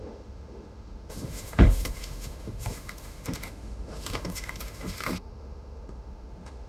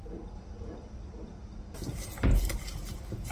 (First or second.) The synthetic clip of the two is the first